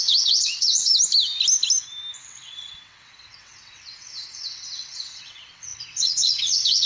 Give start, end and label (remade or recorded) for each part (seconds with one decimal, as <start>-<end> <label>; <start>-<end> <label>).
0.0-0.9 remade; 0.9-2.2 recorded; 2.2-6.9 remade